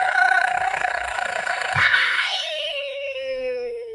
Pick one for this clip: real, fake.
fake